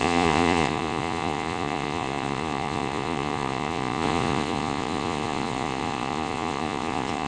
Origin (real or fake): fake